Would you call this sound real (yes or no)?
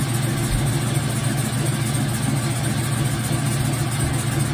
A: yes